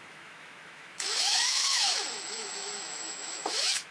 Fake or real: fake